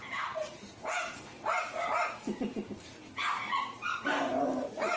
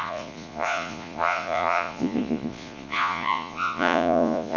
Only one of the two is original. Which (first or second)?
first